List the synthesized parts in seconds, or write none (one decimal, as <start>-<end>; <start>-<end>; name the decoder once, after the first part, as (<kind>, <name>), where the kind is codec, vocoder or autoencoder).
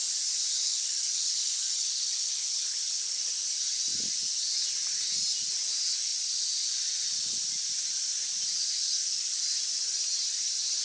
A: 0.5-3.6 (codec, HILCodec); 8.6-9.4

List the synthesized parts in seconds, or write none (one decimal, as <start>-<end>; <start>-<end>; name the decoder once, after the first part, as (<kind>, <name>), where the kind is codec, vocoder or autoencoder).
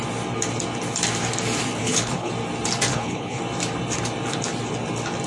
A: 1.8-2.3 (codec, HILCodec); 2.9-3.4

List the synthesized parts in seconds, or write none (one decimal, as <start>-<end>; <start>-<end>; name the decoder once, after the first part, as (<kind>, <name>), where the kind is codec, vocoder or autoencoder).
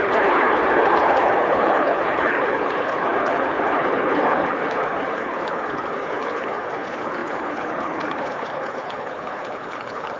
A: 0.0-10.2 (codec, HILCodec)